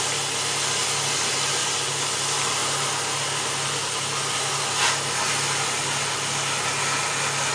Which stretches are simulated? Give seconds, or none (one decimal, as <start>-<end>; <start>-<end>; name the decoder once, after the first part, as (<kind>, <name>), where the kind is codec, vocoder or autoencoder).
none